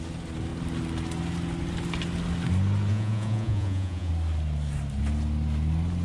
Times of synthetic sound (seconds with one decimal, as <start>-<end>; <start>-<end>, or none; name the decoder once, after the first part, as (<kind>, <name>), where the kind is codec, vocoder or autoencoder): 2.9-4.1 (vocoder, Vocos)